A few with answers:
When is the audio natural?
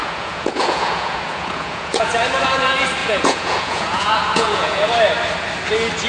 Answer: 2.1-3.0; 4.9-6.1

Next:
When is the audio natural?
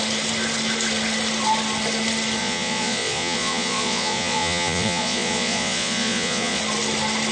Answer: 0.0-2.4; 6.6-7.3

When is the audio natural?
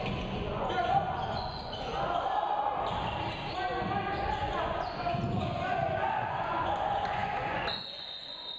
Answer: 1.9-4.4